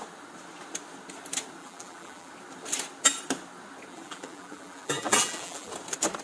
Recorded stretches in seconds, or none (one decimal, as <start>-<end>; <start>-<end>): 0.0-1.6; 2.3-3.9; 5.7-6.2